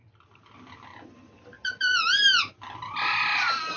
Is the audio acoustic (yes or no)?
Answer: yes